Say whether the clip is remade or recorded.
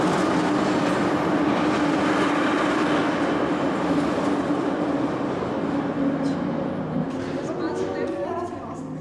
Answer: recorded